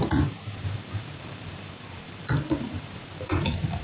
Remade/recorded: remade